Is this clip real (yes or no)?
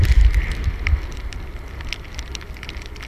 yes